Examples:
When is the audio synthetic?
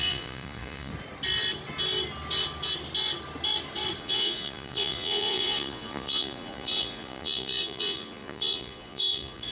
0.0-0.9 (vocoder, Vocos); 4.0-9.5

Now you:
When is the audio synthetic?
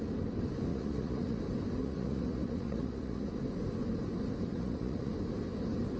0.7-1.4 (vocoder, Vocos); 1.8-3.4; 4.5-5.1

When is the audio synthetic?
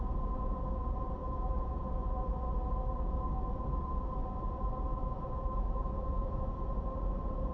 1.2-1.8 (autoencoder, DAC-VAE); 4.9-6.5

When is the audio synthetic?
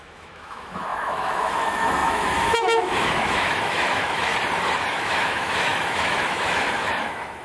0.0-4.3 (autoencoder, DAC-VAE); 4.9-7.4